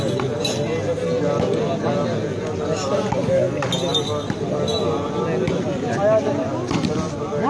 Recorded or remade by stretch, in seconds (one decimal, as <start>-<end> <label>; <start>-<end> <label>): 0.0-7.5 recorded